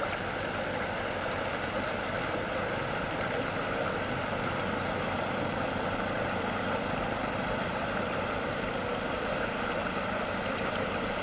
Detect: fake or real real